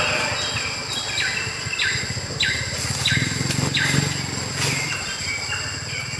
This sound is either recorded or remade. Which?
recorded